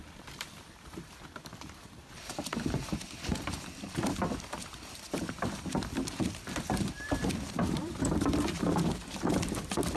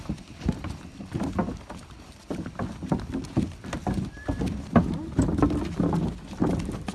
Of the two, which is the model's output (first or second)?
first